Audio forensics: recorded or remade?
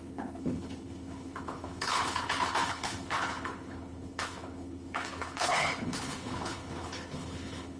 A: remade